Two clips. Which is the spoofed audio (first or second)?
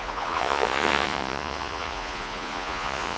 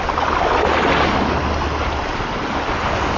first